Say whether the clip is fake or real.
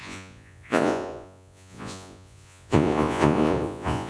fake